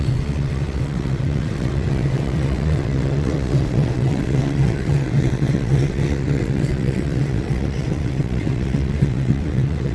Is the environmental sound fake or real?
fake